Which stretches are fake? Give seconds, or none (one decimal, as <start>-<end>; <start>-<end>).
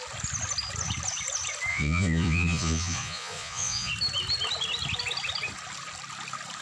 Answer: 1.7-3.9